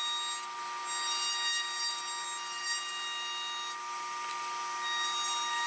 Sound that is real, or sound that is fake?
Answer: real